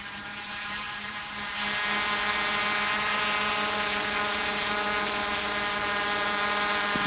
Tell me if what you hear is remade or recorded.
remade